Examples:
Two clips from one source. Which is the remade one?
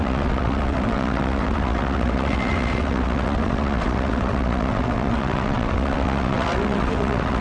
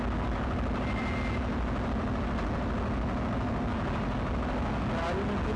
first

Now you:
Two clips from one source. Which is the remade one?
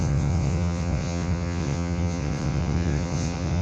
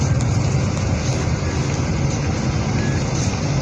first